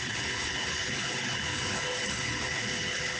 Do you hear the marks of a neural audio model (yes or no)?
yes